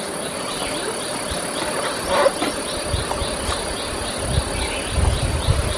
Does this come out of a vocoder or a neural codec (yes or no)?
no